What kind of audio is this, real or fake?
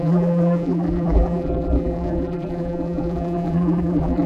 fake